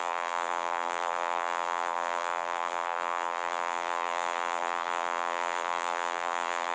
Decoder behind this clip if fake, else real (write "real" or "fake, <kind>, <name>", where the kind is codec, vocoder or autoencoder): fake, vocoder, BigVGAN v2